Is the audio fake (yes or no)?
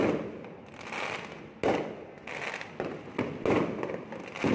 no